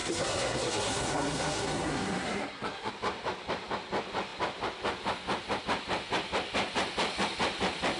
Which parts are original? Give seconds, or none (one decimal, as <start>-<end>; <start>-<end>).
2.9-8.0